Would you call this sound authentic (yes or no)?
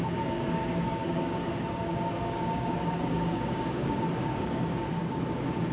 no